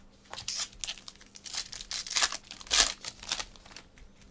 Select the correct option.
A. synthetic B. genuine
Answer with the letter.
B